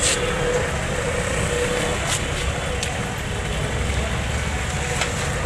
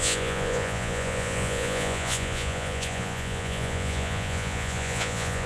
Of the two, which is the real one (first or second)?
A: first